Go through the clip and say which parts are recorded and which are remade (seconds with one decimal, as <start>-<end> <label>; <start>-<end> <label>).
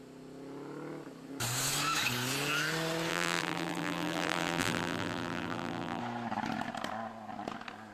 0.0-3.1 recorded; 3.1-6.0 remade; 6.0-7.9 recorded